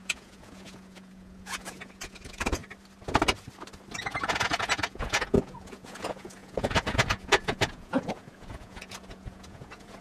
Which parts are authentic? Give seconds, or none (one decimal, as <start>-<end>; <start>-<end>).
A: 2.6-4.0